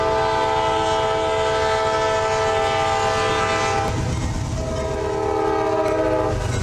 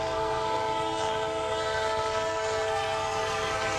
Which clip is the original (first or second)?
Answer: first